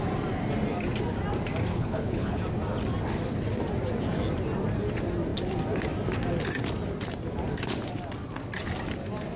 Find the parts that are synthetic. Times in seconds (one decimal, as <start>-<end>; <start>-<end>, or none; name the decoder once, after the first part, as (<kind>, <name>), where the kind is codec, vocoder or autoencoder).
1.7-2.4 (codec, HILCodec)

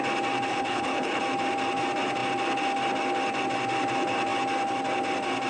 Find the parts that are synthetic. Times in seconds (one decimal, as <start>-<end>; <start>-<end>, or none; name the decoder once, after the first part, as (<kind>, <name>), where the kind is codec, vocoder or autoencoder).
0.5-1.2 (codec, HILCodec)

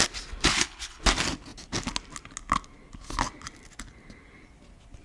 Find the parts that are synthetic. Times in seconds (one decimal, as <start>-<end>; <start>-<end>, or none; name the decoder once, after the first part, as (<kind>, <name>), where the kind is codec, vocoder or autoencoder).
0.5-1.0 (codec, HILCodec)